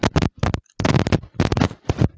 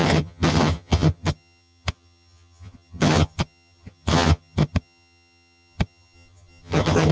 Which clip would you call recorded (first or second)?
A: first